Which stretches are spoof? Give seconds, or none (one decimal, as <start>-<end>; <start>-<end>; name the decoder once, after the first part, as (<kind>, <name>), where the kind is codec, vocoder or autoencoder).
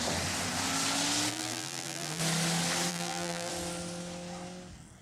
1.3-2.2 (vocoder, BigVGAN v2); 2.9-3.5